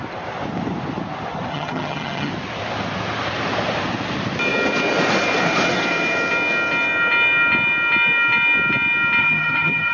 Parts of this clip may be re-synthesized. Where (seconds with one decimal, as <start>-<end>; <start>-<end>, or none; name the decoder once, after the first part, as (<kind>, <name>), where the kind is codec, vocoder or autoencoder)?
1.5-2.3 (vocoder, HiFi-GAN); 9.2-9.9